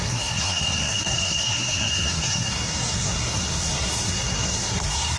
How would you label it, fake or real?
fake